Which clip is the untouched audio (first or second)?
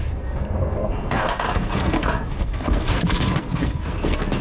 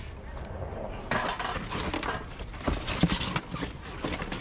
second